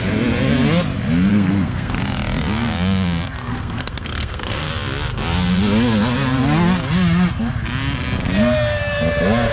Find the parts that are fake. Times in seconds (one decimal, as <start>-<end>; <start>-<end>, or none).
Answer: 1.3-2.0; 3.5-4.7